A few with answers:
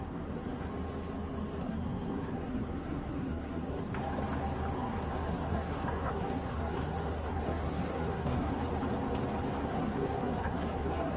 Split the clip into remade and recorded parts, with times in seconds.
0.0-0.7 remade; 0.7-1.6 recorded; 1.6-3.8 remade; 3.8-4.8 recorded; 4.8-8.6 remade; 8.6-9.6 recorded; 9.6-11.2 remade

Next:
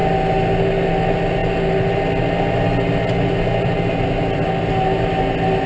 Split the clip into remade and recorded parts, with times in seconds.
0.0-5.7 recorded

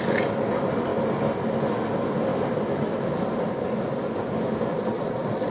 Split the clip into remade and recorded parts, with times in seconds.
0.0-4.7 recorded; 4.7-5.5 remade

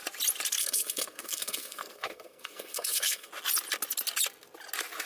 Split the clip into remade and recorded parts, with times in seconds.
0.0-0.6 recorded; 0.6-3.3 remade; 3.3-5.1 recorded

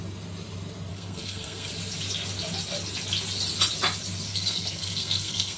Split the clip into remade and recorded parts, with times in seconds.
0.0-0.9 recorded; 0.9-1.7 remade; 1.7-4.3 recorded; 4.3-5.6 remade

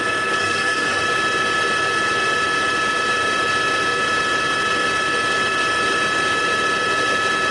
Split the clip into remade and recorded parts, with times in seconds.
0.0-0.4 recorded; 0.4-1.0 remade; 1.0-7.5 recorded